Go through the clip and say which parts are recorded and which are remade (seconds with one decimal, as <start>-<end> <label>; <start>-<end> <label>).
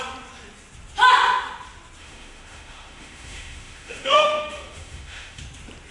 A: 0.0-2.0 recorded; 2.0-5.4 remade; 5.4-5.9 recorded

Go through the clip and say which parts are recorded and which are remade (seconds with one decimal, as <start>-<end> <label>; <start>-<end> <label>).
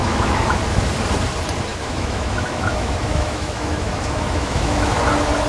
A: 0.0-0.6 remade; 0.6-1.7 recorded; 1.7-5.0 remade; 5.0-5.5 recorded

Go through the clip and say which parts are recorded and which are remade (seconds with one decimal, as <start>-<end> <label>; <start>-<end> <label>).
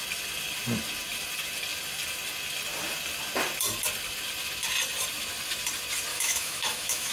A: 0.0-6.1 recorded; 6.1-7.1 remade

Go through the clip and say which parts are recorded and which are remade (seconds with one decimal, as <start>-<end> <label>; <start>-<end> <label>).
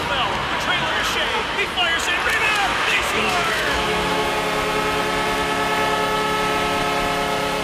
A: 0.0-2.7 recorded; 2.7-4.3 remade; 4.3-7.6 recorded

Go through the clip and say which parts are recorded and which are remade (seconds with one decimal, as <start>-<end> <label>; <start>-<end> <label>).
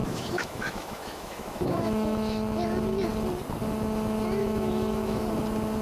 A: 0.0-2.4 remade; 2.4-4.4 recorded; 4.4-5.2 remade; 5.2-5.8 recorded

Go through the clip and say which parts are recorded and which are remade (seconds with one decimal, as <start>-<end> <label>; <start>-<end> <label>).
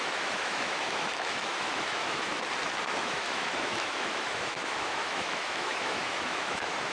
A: 0.0-2.3 remade; 2.3-3.0 recorded; 3.0-6.9 remade